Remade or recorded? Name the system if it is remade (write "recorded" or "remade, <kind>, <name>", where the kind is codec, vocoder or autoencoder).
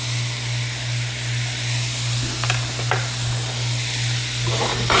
recorded